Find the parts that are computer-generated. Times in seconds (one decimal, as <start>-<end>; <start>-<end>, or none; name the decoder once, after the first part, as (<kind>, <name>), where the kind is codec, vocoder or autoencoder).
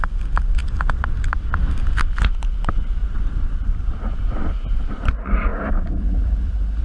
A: 3.0-5.1 (vocoder, BigVGAN v2)